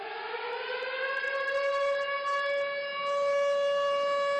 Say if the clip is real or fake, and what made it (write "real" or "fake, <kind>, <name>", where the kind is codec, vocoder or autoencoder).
real